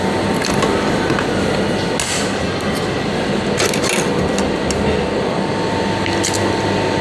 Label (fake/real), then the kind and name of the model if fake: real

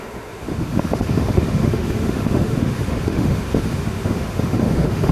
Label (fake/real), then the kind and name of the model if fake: fake, autoencoder, DAC-VAE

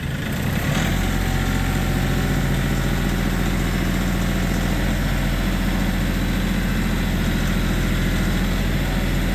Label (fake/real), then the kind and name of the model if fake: real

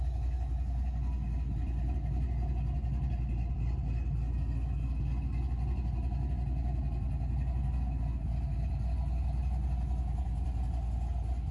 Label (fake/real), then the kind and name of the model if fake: real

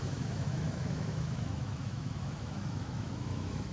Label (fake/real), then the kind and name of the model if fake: fake, autoencoder, DAC-VAE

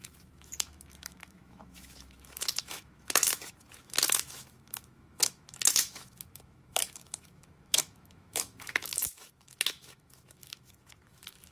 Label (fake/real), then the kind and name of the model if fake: fake, autoencoder, DAC-VAE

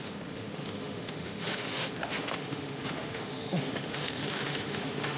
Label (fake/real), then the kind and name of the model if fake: fake, autoencoder, DAC-VAE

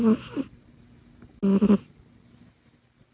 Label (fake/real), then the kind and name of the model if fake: real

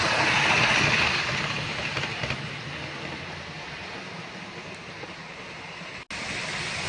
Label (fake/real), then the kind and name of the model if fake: real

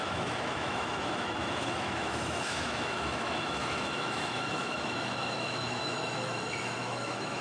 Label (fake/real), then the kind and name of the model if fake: fake, autoencoder, DAC-VAE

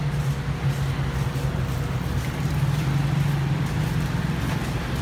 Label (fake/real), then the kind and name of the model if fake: real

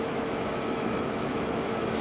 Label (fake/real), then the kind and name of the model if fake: fake, autoencoder, DAC-VAE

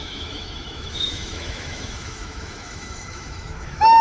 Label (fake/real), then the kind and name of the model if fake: fake, autoencoder, DAC-VAE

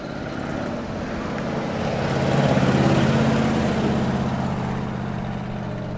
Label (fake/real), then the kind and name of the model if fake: real